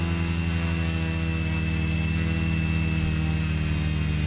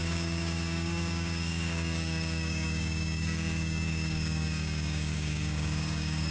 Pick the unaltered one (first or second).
first